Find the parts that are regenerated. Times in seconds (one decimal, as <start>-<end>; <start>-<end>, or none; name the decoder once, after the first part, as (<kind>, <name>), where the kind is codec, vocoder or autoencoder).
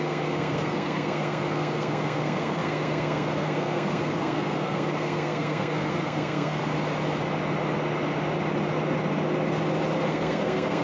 0.0-6.6 (codec, SNAC); 10.1-10.8